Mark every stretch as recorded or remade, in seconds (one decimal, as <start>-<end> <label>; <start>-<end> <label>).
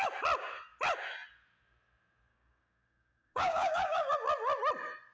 0.0-2.3 recorded; 2.3-4.1 remade; 4.1-5.1 recorded